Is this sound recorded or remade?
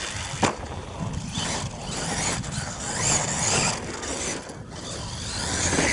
recorded